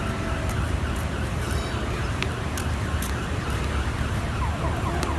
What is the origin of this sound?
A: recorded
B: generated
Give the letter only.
A